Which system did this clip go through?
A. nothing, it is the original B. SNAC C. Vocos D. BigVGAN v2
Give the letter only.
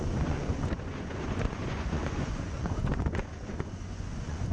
C